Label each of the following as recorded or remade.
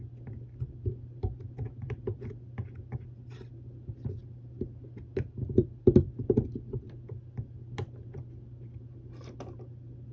recorded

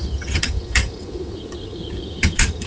remade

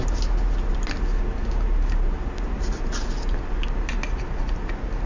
recorded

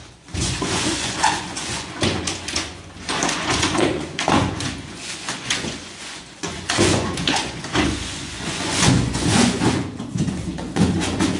remade